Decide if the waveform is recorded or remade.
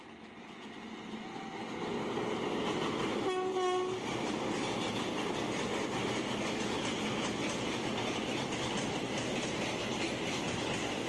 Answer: recorded